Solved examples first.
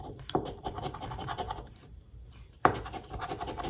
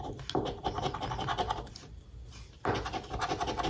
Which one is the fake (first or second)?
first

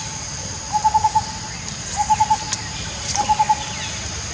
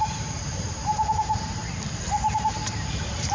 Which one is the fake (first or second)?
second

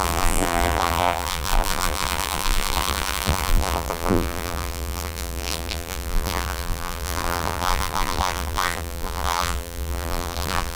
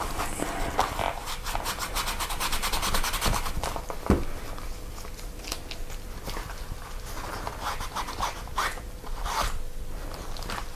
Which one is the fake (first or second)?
first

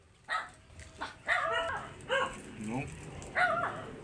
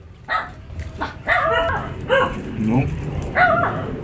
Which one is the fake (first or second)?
second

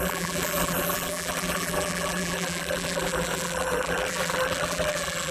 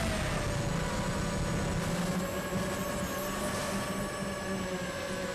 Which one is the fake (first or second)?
first